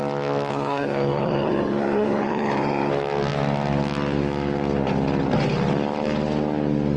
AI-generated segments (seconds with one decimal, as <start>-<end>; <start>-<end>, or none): 0.5-2.9